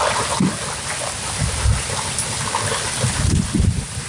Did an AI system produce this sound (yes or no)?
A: no